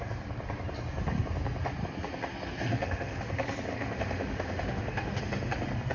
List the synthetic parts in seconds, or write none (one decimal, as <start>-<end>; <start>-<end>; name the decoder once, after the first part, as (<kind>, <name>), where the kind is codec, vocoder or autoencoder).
2.7-3.3 (autoencoder, DAC-VAE); 3.7-5.2